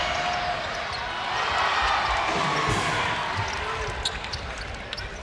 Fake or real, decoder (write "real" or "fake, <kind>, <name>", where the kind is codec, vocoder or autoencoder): real